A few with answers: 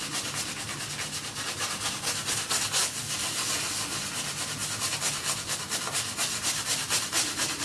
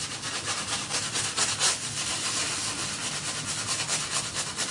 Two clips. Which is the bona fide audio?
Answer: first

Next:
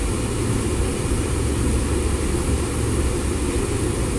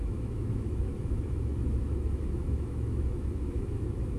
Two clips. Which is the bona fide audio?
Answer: first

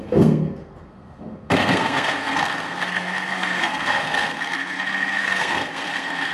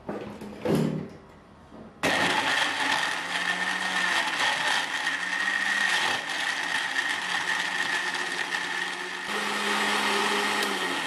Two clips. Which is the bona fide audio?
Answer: second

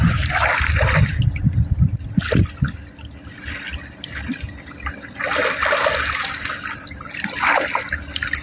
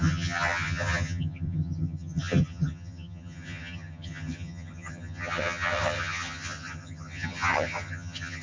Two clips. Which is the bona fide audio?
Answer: first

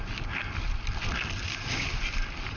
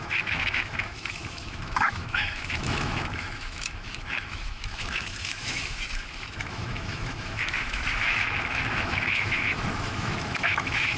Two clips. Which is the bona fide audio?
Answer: first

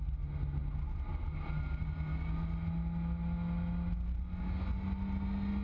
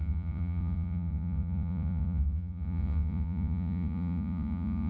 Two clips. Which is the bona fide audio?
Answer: first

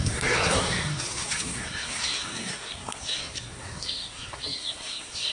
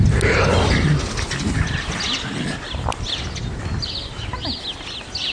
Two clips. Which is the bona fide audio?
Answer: second